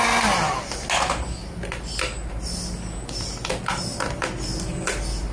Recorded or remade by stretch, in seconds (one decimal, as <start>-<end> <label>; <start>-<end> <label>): 0.0-5.3 recorded